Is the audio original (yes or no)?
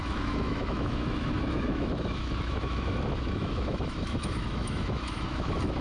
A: no